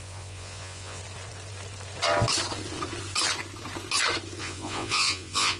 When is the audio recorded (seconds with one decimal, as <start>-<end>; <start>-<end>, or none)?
1.0-4.4